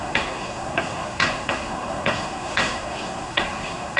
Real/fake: fake